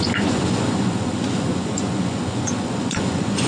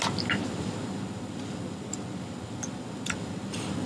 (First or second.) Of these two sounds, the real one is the second